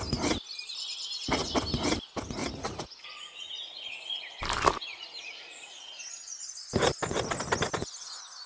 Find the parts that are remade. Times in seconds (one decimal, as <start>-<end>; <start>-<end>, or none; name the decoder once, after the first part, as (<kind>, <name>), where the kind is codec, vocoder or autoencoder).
2.4-4.4 (vocoder, Vocos); 4.9-6.0